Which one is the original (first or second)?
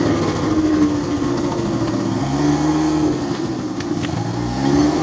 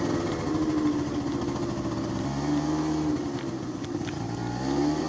second